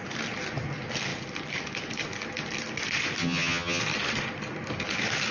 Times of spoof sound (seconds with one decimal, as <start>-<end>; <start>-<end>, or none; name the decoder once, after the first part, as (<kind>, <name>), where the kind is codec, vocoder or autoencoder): 3.2-3.8 (vocoder, HiFi-GAN)